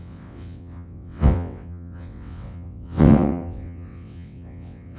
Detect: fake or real fake